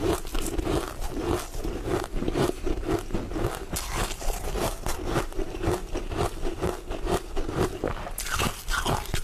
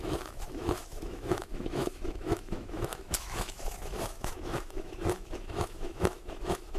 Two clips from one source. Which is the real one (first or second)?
first